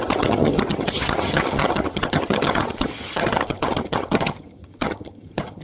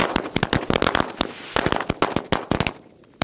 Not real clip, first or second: first